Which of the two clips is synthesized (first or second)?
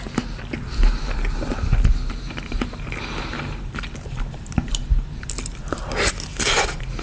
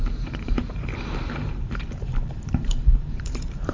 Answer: second